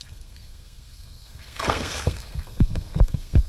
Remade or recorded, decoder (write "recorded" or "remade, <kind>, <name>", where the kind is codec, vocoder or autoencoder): remade, codec, SNAC